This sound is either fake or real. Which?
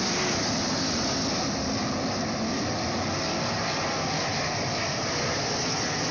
real